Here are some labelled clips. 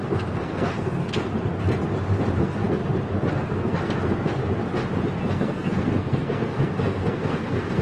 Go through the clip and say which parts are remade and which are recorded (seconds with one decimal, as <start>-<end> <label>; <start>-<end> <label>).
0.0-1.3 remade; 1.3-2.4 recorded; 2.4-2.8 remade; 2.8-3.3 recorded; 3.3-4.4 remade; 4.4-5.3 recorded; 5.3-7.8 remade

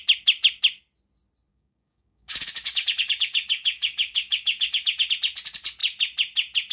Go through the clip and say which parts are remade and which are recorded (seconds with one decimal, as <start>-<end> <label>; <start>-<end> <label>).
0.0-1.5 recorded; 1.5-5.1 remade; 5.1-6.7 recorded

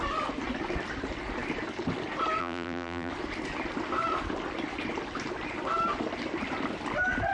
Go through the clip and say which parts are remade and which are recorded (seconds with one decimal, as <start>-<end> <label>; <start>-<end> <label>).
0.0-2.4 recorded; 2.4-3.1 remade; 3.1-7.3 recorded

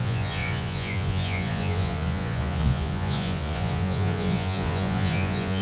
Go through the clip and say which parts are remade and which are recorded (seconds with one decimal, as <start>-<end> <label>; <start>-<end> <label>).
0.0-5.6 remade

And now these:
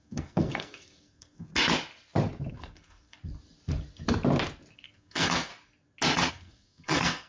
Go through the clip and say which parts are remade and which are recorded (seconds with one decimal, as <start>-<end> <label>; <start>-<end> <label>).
0.0-1.5 remade; 1.5-2.5 recorded; 2.5-3.2 remade; 3.2-4.7 recorded; 4.7-5.5 remade; 5.5-6.3 recorded; 6.3-7.3 remade

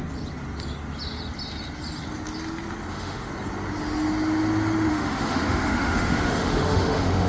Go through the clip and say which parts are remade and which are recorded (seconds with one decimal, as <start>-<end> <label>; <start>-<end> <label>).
0.0-2.9 recorded; 2.9-3.3 remade; 3.3-4.9 recorded; 4.9-7.3 remade